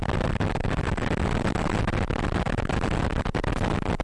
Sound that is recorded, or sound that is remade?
recorded